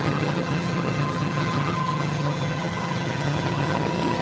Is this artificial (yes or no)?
yes